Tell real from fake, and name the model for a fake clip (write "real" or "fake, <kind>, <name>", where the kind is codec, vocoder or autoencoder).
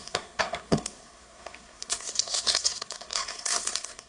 fake, codec, SNAC